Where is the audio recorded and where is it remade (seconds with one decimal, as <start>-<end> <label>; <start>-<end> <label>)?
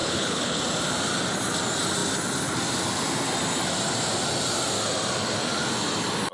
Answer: 0.0-0.6 remade; 0.6-6.3 recorded